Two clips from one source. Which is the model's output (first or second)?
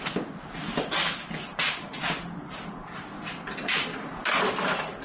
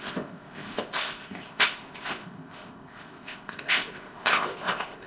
second